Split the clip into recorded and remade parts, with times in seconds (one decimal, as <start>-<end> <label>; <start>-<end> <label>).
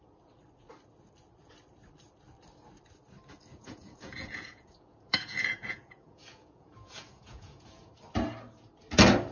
0.0-3.5 recorded; 3.5-7.9 remade; 7.9-9.3 recorded